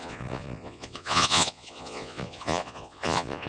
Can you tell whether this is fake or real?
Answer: fake